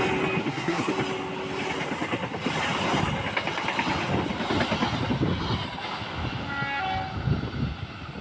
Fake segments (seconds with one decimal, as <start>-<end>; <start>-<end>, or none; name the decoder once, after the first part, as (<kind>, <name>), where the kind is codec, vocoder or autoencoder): 0.4-0.9 (codec, SNAC)